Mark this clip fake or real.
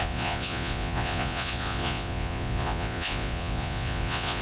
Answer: fake